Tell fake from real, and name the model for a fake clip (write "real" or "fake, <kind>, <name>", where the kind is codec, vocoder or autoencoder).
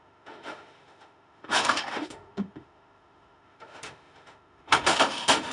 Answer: fake, autoencoder, DAC-VAE